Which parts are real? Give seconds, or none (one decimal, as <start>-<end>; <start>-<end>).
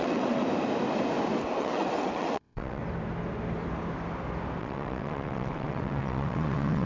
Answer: 0.4-1.6; 2.8-4.6